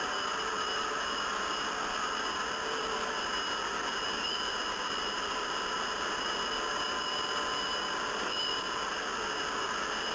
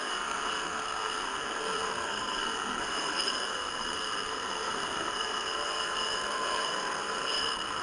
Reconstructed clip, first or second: second